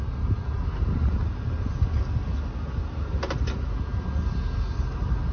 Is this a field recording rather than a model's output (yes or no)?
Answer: yes